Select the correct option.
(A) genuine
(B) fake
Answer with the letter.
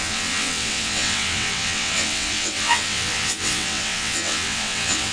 B